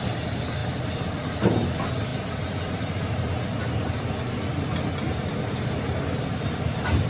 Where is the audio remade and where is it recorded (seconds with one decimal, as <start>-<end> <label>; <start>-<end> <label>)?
0.0-7.1 recorded

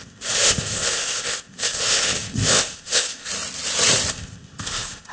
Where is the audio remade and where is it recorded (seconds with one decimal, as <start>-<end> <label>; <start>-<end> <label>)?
0.0-3.3 remade; 3.3-4.1 recorded; 4.1-5.1 remade

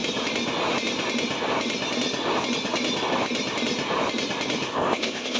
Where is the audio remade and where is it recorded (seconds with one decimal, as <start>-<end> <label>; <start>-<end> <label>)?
0.0-4.7 recorded; 4.7-5.4 remade

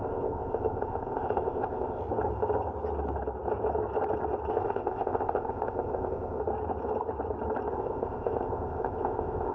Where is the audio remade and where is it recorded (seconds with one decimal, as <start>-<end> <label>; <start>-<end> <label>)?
0.0-2.0 remade; 2.0-4.5 recorded; 4.5-6.4 remade; 6.4-7.7 recorded; 7.7-9.5 remade

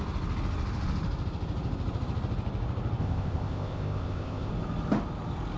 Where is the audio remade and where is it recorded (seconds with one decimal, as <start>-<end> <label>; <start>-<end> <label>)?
0.0-3.0 recorded; 3.0-4.5 remade; 4.5-5.6 recorded

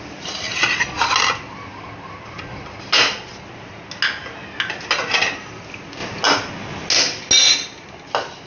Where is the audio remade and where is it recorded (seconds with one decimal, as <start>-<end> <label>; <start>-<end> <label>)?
0.0-8.5 recorded

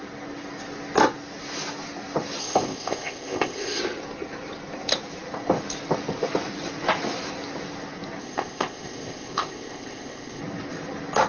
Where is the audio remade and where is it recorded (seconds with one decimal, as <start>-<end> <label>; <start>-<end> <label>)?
0.0-2.4 recorded; 2.4-3.8 remade; 3.8-8.2 recorded; 8.2-10.4 remade; 10.4-11.3 recorded

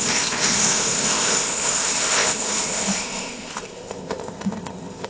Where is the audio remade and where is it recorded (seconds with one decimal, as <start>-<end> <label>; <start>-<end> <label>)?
0.0-5.1 remade